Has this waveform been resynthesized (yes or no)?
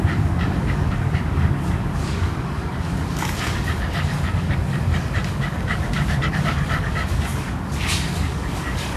yes